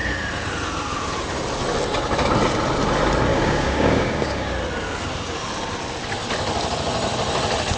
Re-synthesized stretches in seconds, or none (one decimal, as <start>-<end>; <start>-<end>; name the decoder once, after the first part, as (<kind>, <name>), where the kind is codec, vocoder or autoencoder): 3.3-4.5 (codec, DAC)